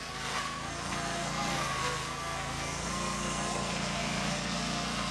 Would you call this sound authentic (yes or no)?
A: no